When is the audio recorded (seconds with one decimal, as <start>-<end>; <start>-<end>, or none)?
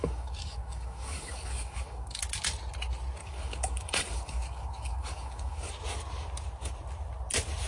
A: 2.2-3.2; 5.7-7.7